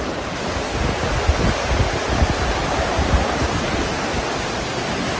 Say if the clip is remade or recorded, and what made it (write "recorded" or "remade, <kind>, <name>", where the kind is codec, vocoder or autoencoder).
recorded